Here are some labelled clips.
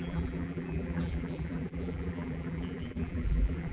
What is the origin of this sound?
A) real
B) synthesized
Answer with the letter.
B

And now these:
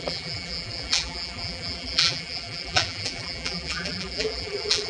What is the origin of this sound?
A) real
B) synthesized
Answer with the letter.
B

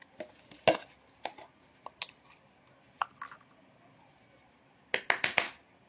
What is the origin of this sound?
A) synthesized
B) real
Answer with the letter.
B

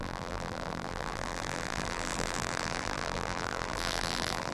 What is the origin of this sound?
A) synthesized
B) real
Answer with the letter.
A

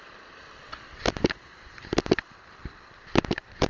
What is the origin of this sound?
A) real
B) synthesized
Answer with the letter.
B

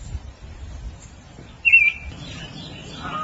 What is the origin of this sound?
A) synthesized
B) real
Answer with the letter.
A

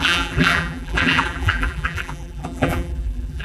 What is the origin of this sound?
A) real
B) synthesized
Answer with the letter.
B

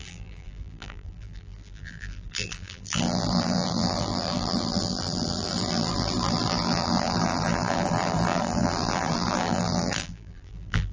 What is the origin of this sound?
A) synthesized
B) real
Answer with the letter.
A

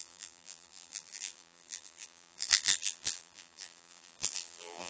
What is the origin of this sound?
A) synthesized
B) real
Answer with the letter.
A